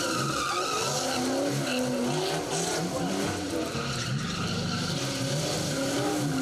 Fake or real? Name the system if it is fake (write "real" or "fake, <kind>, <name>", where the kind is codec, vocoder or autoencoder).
real